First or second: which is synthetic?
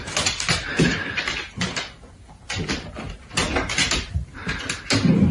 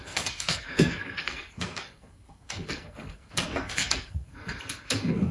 second